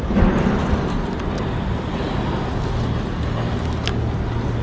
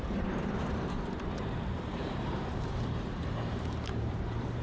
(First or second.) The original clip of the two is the first